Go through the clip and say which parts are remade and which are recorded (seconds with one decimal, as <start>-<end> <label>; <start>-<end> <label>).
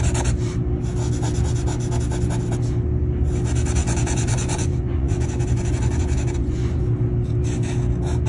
0.0-3.8 recorded; 3.8-6.8 remade; 6.8-8.3 recorded